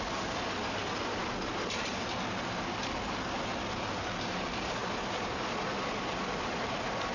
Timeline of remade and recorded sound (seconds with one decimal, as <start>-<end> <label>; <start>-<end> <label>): 0.0-7.1 recorded